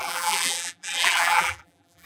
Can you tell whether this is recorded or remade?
remade